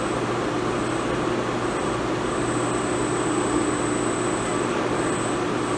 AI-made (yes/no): no